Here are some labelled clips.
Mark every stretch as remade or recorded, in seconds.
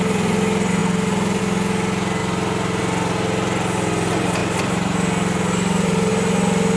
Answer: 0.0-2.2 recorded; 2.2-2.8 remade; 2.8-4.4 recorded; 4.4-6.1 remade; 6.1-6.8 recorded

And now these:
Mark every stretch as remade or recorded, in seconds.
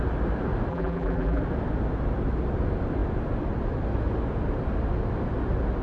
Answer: 0.0-0.7 recorded; 0.7-1.4 remade; 1.4-5.8 recorded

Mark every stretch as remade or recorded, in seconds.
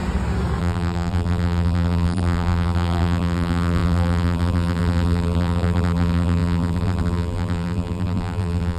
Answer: 0.0-0.6 recorded; 0.6-8.8 remade